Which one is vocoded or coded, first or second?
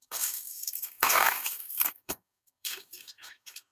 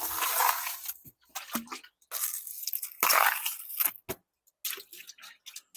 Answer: first